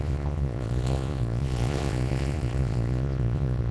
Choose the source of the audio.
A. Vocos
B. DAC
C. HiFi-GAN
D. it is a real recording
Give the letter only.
A